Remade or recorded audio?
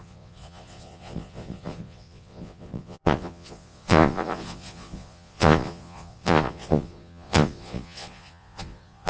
remade